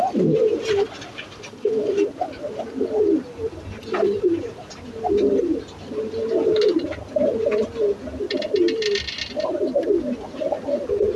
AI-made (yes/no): no